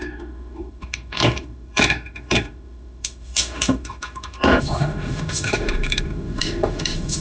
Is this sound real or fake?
fake